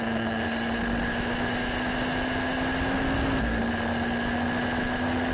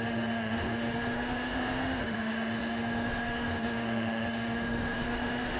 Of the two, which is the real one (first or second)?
first